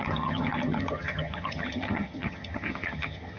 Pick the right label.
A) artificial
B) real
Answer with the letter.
A